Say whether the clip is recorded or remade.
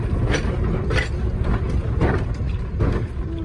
recorded